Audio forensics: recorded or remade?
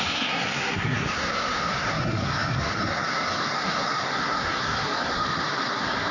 remade